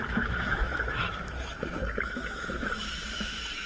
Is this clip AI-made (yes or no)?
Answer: yes